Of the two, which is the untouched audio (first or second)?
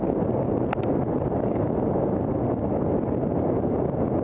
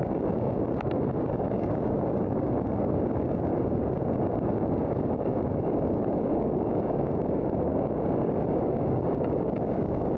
first